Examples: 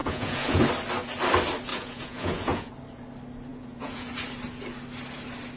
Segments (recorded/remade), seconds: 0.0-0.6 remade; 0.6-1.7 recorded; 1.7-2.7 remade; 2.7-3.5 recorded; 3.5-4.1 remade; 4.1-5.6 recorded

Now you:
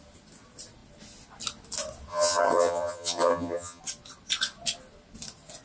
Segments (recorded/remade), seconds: 0.0-2.1 recorded; 2.1-3.8 remade; 3.8-5.6 recorded